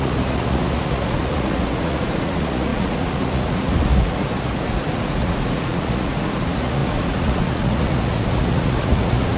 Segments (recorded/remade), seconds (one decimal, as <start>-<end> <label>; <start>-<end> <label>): 0.0-9.4 remade